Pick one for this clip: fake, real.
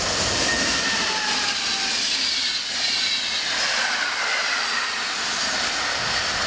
real